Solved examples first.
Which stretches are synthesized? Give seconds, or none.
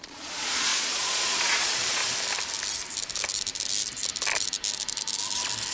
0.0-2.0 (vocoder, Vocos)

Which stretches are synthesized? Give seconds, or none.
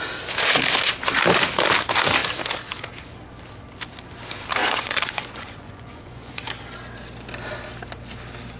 4.6-6.4 (vocoder, Vocos)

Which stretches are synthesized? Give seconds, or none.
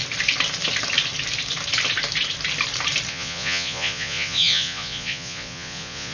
3.1-6.1 (vocoder, Vocos)